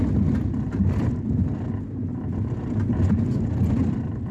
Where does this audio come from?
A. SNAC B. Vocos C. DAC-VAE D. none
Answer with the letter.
D